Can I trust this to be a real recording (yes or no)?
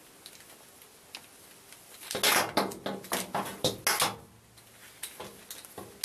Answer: yes